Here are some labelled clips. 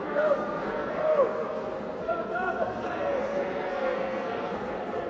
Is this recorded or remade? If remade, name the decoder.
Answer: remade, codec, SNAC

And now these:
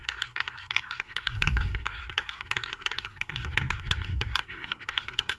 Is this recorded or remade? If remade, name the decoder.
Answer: remade, codec, SNAC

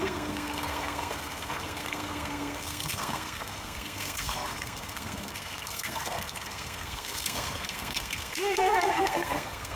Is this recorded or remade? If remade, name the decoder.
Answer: remade, codec, SNAC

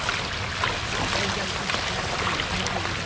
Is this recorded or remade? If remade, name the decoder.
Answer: recorded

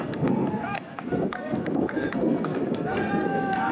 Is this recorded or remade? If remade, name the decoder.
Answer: remade, codec, SNAC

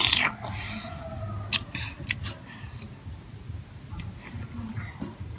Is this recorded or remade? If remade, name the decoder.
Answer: recorded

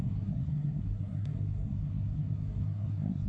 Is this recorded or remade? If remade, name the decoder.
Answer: remade, codec, SNAC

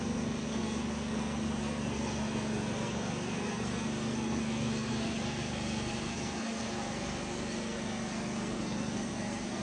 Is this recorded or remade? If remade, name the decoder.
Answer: remade, codec, SNAC